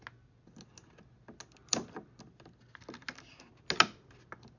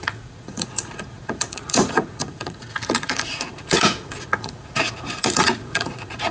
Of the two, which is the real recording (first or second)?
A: first